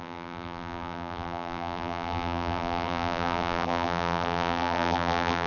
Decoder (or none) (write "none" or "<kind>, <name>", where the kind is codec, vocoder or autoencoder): vocoder, BigVGAN v2